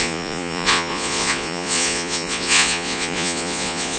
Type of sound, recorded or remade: remade